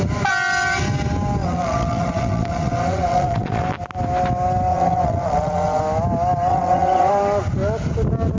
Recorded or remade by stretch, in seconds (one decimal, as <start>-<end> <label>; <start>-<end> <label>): 0.0-1.4 recorded; 1.4-3.6 remade; 3.6-4.7 recorded; 4.7-5.8 remade; 5.8-6.5 recorded; 6.5-7.1 remade; 7.1-8.4 recorded